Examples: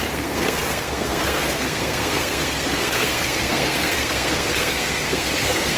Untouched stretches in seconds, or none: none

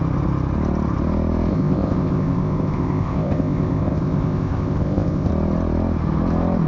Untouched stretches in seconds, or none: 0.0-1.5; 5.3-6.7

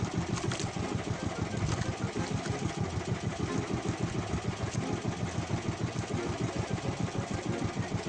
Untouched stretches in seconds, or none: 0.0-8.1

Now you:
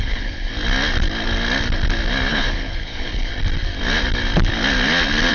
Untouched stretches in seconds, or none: 0.5-2.3; 3.3-5.3

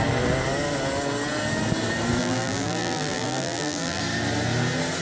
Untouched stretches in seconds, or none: 0.0-2.2; 4.0-5.0

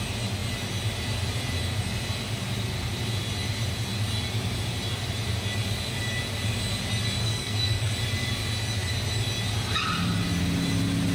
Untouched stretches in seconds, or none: 0.0-7.2; 7.9-11.1

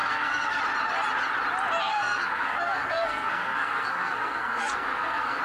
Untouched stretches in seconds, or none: 0.6-1.9